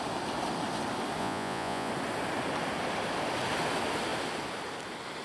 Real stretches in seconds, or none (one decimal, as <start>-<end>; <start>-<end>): 0.0-1.2; 1.9-5.2